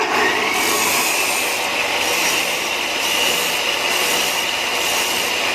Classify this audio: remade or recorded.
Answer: recorded